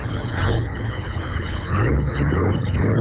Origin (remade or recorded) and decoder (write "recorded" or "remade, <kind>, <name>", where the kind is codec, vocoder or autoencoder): remade, codec, HILCodec